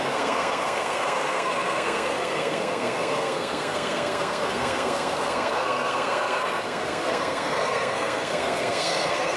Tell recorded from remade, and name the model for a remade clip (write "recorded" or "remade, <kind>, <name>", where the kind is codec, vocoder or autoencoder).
remade, codec, SNAC